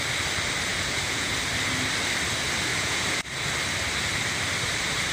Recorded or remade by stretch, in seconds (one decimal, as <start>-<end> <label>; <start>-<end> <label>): 0.0-0.7 recorded; 0.7-1.3 remade; 1.3-2.7 recorded; 2.7-3.2 remade; 3.2-5.1 recorded